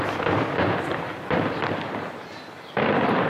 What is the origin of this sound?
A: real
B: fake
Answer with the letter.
B